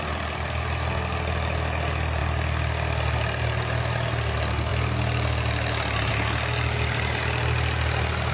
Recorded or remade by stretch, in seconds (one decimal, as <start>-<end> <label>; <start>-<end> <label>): 0.0-8.3 recorded